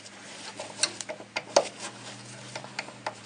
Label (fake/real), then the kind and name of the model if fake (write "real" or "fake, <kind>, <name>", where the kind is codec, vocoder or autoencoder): real